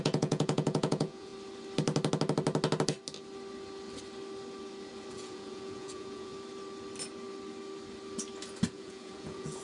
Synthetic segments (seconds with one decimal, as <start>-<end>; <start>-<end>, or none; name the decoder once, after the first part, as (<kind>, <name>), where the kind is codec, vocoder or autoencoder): 0.0-1.3 (vocoder, Vocos); 5.1-6.3; 8.7-9.6